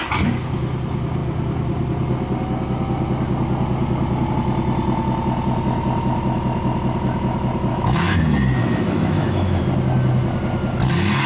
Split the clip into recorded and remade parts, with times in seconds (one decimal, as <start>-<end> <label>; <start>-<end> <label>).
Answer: 0.0-7.7 recorded; 7.7-8.2 remade; 8.2-8.6 recorded; 8.6-9.6 remade; 9.6-11.3 recorded